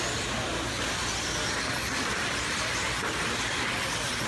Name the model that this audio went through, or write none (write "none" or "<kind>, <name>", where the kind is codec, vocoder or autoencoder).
none